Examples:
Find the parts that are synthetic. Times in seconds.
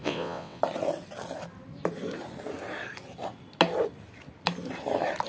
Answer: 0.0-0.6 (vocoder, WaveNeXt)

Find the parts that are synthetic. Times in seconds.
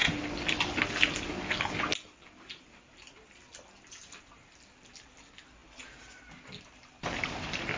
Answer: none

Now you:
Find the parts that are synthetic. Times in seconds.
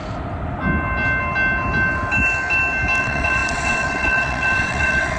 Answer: 3.0-5.2 (vocoder, WaveNeXt)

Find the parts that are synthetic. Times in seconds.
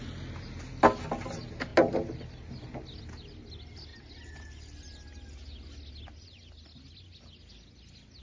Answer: none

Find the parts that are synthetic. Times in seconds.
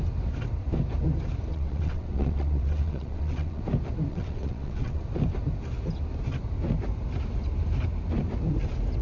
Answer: 1.5-3.6 (vocoder, WaveNeXt); 4.1-5.0